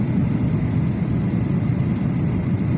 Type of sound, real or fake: real